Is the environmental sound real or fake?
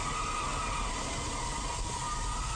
real